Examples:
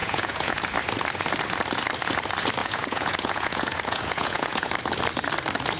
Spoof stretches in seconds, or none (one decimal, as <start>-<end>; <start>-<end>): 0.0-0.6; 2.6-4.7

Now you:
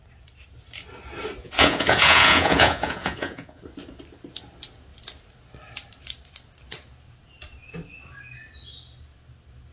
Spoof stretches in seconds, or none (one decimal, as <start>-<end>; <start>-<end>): 1.4-3.6

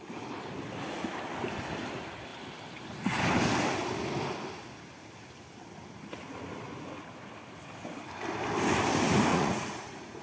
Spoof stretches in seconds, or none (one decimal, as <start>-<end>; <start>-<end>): 9.3-10.2

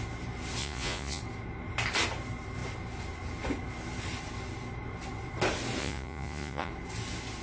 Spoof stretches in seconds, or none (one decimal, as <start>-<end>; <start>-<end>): 0.6-1.2; 5.8-6.7

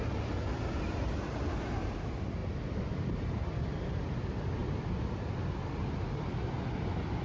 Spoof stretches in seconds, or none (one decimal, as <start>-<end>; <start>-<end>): none

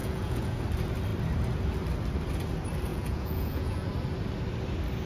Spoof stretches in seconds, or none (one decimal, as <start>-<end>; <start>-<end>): 0.0-0.6; 2.9-3.9

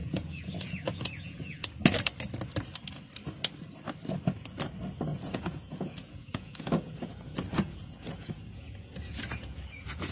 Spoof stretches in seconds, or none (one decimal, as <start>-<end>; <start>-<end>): 0.0-1.7; 5.1-10.1

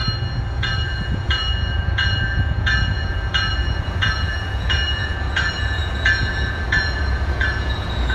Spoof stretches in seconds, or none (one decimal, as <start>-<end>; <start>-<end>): 0.5-8.1